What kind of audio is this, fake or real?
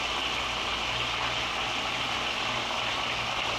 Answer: real